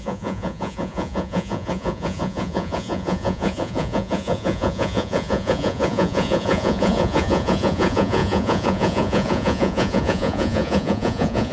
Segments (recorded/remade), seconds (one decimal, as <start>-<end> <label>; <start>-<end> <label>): 0.0-11.5 remade